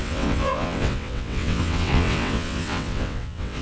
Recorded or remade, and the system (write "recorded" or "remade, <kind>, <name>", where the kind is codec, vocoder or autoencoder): remade, vocoder, WaveNeXt